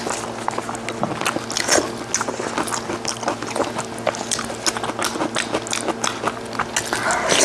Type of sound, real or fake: real